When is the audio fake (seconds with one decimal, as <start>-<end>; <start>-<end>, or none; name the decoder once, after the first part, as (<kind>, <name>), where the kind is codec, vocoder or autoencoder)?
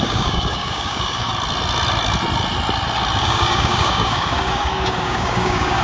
0.0-1.3 (codec, DAC); 3.2-5.8